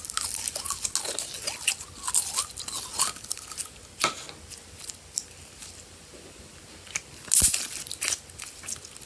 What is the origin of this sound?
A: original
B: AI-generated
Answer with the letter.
A